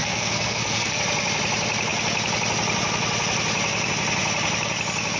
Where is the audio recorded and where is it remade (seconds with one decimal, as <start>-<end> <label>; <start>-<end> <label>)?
0.0-1.0 remade; 1.0-5.2 recorded